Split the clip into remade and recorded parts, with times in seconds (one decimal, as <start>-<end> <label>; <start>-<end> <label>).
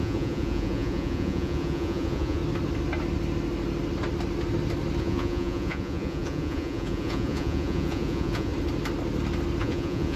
0.0-2.4 remade; 2.4-5.0 recorded; 5.0-8.5 remade; 8.5-9.6 recorded; 9.6-10.2 remade